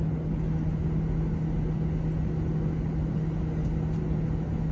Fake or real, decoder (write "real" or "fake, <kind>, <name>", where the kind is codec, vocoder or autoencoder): real